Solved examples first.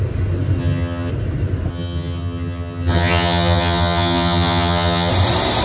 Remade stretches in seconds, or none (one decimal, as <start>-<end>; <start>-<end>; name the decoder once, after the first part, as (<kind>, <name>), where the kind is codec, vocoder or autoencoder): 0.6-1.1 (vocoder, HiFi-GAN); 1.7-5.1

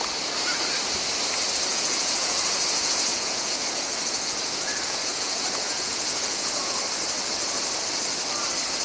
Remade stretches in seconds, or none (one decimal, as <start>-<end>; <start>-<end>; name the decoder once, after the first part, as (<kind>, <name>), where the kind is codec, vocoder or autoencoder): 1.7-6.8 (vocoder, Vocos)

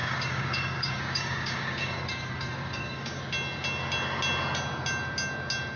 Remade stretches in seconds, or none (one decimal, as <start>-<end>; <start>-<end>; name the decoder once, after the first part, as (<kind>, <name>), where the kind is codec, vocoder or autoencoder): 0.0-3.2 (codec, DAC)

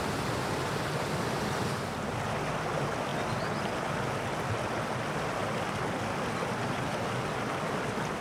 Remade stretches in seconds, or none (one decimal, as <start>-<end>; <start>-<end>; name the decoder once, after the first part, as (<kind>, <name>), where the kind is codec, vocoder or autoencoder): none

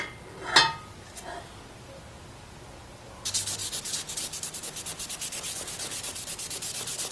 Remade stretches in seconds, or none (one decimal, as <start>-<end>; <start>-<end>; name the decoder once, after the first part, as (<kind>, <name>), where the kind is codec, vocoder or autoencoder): none

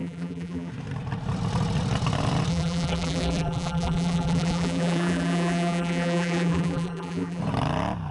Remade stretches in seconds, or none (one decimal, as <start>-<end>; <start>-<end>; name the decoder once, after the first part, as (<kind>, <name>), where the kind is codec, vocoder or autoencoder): 0.0-0.7 (vocoder, BigVGAN v2); 2.5-7.4